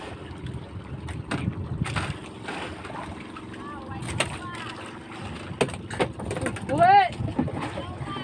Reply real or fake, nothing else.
real